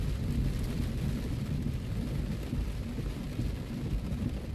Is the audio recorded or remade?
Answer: remade